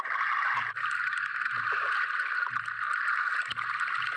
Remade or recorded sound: recorded